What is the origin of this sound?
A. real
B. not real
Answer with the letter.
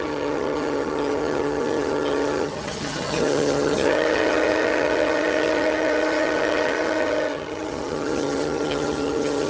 B